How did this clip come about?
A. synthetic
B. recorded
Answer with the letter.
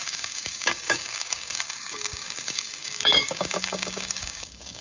A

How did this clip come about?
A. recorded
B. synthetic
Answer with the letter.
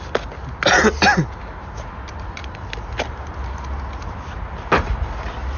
A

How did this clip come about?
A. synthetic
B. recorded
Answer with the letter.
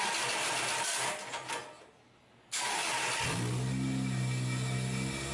B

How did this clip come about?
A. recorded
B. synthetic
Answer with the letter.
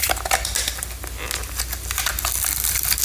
A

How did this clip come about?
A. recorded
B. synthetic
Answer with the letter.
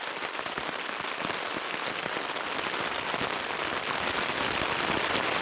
A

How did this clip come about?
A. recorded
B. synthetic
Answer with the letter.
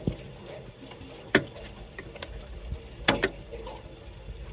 A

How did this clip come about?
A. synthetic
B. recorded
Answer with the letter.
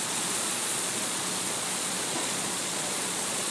A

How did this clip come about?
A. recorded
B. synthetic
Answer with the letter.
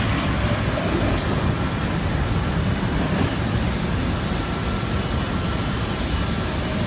A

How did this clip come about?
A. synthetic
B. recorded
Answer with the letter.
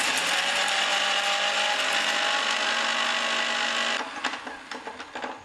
B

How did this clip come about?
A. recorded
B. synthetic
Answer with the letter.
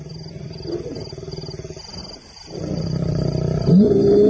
A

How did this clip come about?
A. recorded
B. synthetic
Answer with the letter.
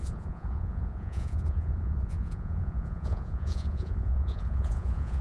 B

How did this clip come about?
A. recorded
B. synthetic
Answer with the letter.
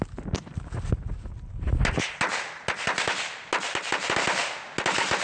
A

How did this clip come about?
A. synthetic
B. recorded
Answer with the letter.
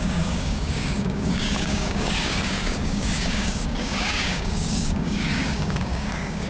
A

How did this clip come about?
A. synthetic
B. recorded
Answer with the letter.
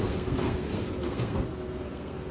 A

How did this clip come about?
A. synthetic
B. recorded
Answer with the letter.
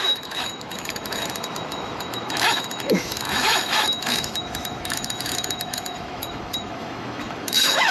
A